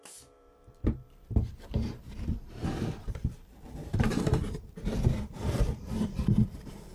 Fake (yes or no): yes